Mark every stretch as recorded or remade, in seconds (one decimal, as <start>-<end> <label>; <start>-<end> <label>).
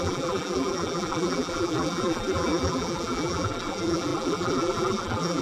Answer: 0.0-5.4 remade